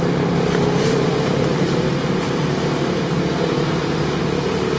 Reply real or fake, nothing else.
real